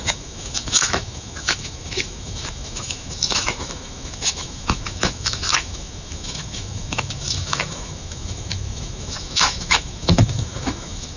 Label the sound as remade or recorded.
remade